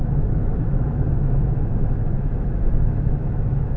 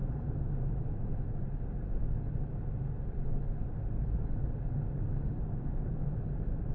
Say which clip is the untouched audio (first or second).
second